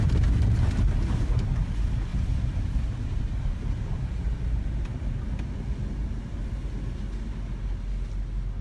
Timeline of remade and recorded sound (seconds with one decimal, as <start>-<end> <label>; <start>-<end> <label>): 0.0-2.1 recorded; 2.1-3.2 remade; 3.2-8.6 recorded